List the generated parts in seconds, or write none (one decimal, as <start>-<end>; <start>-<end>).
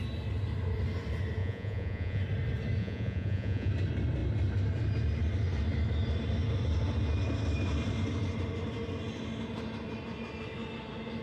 1.4-2.2; 2.8-3.7